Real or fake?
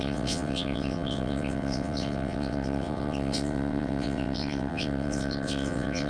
fake